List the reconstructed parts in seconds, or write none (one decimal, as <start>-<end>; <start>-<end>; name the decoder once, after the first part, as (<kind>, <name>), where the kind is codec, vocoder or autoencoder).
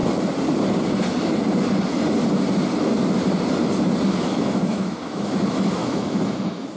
4.1-6.8 (autoencoder, DAC-VAE)